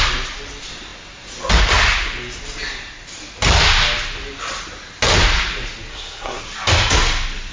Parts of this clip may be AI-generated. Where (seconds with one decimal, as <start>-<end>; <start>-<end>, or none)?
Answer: 5.9-6.4